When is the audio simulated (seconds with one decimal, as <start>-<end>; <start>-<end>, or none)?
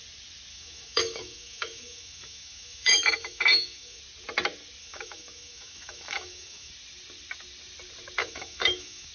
0.5-4.0; 4.8-6.7; 8.2-9.1